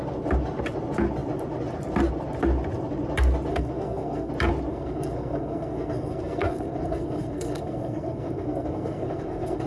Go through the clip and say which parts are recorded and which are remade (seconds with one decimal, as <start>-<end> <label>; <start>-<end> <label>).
0.0-3.5 recorded; 3.5-4.3 remade; 4.3-4.7 recorded; 4.7-9.7 remade